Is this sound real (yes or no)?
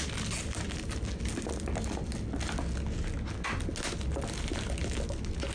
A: yes